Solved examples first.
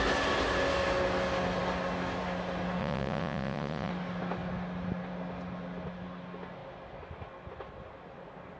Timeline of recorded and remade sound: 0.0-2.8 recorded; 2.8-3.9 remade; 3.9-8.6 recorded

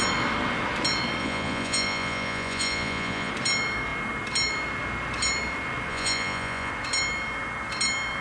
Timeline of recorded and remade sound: 0.0-1.2 recorded; 1.2-3.3 remade; 3.3-5.9 recorded; 5.9-6.7 remade; 6.7-8.2 recorded

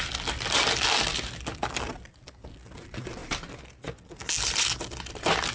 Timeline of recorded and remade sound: 0.0-5.5 recorded

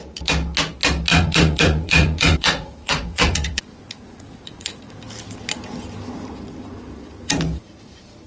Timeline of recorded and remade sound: 0.0-1.1 recorded; 1.1-4.9 remade; 4.9-8.3 recorded

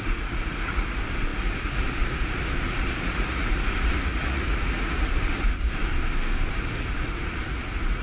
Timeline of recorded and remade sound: 0.0-5.9 remade; 5.9-6.5 recorded; 6.5-8.0 remade